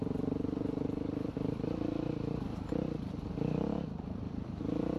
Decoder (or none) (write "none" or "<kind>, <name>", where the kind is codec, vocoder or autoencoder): vocoder, BigVGAN v2